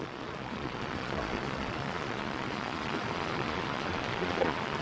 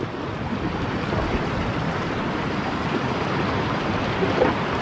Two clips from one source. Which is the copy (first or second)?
first